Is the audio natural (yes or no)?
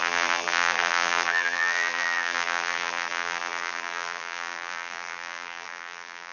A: no